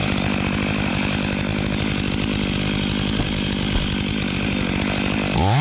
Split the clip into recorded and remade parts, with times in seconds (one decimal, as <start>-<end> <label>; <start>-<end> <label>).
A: 0.0-0.9 remade; 0.9-1.5 recorded; 1.5-4.5 remade; 4.5-5.6 recorded